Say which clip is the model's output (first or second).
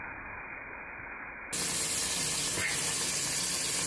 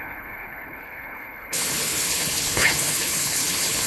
second